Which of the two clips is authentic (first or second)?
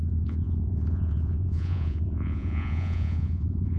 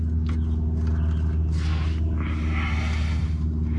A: second